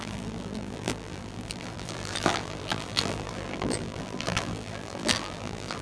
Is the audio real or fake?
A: fake